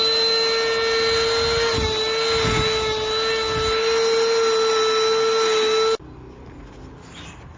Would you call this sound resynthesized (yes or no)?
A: no